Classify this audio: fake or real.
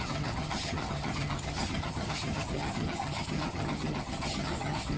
fake